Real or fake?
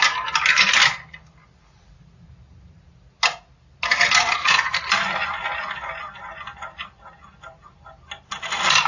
real